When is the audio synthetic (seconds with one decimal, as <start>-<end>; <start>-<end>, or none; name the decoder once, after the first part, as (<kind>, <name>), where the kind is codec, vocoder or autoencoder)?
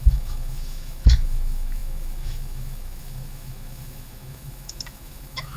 0.0-5.6 (autoencoder, DAC-VAE)